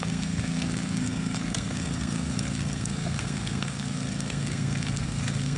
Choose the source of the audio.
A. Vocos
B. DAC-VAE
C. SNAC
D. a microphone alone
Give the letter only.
C